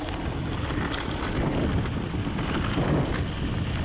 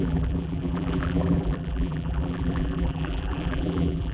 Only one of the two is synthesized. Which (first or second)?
second